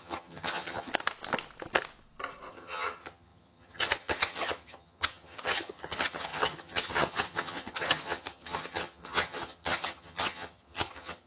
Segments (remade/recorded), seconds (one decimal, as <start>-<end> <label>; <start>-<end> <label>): 0.0-0.9 remade; 0.9-2.5 recorded; 2.5-11.3 remade